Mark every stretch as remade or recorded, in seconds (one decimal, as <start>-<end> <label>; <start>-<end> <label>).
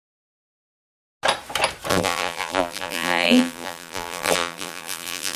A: 0.0-1.9 recorded; 1.9-5.4 remade